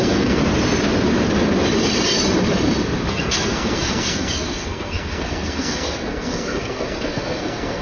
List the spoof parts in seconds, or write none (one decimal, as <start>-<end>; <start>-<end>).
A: 0.0-0.4; 3.1-7.8